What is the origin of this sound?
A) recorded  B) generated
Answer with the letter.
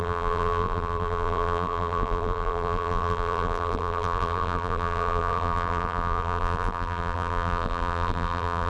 B